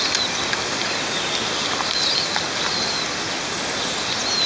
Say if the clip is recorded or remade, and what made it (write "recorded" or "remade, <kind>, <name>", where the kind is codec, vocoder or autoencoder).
recorded